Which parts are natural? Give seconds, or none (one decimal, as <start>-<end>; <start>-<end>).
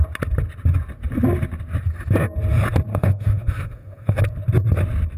0.0-2.9; 4.2-5.2